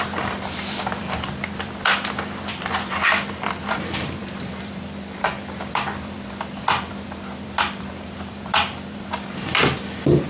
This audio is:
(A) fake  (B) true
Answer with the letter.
A